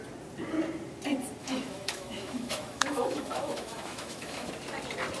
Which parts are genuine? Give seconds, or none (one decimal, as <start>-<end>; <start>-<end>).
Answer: 0.0-1.4; 4.5-5.2